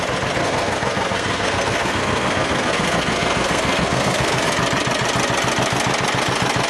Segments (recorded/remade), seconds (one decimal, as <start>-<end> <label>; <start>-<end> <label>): 0.0-0.4 recorded; 0.4-4.4 remade; 4.4-6.7 recorded